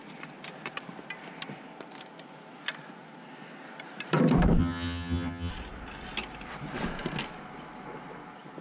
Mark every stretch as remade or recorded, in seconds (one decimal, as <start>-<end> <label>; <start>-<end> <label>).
0.0-4.6 recorded; 4.6-5.5 remade; 5.5-8.6 recorded

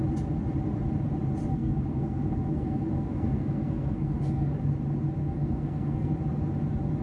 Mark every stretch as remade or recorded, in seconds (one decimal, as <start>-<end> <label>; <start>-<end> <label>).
0.0-1.5 recorded; 1.5-4.6 remade; 4.6-5.2 recorded; 5.2-6.1 remade; 6.1-7.0 recorded

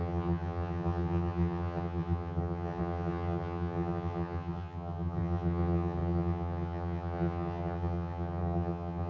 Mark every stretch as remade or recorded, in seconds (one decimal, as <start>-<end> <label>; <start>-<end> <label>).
0.0-9.1 remade